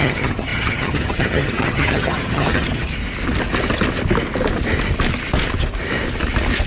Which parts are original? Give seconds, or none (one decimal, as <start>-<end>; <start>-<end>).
2.9-6.7